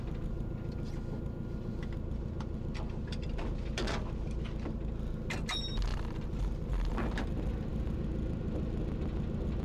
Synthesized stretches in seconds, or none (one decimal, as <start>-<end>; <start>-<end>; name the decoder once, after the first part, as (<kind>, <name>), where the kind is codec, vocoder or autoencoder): none